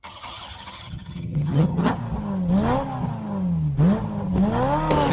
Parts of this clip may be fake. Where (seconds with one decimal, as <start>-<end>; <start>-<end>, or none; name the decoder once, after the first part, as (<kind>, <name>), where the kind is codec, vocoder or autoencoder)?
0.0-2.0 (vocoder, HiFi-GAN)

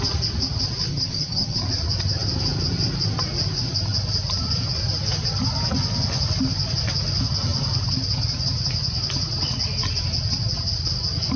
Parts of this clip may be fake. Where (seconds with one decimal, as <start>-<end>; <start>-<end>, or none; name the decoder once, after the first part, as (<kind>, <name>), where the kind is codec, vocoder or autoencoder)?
0.9-1.6 (vocoder, HiFi-GAN)

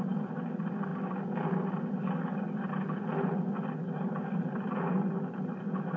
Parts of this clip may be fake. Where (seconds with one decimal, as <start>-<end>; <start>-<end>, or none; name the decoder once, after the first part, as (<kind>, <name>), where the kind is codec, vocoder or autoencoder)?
none

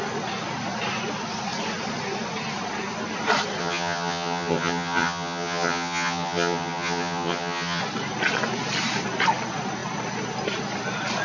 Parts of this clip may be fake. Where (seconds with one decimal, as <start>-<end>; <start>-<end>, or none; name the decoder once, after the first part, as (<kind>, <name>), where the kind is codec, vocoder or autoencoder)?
3.6-7.8 (vocoder, HiFi-GAN)

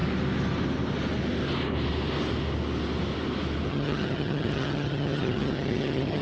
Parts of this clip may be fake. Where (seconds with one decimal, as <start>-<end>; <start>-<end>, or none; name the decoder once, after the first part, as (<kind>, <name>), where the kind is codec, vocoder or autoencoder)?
3.7-6.2 (vocoder, HiFi-GAN)

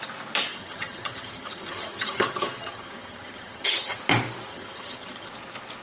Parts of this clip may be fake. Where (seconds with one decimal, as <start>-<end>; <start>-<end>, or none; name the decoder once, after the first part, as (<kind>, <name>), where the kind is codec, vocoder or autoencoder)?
0.5-4.0 (vocoder, HiFi-GAN); 4.5-5.3

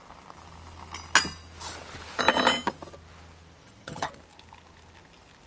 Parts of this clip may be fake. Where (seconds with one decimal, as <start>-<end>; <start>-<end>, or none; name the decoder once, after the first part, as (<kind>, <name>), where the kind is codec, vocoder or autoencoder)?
3.6-4.1 (vocoder, HiFi-GAN)